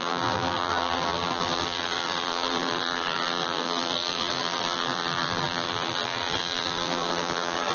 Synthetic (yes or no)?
yes